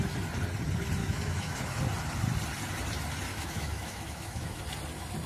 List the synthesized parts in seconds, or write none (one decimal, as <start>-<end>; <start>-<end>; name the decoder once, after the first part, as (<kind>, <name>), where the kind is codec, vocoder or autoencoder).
1.0-1.8 (autoencoder, DAC-VAE); 3.3-4.6